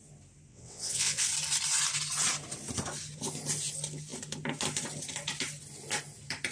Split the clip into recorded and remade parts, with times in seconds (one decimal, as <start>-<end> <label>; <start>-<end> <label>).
0.0-0.5 recorded; 0.5-1.3 remade; 1.3-6.5 recorded